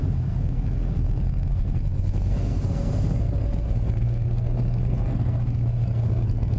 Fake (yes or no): yes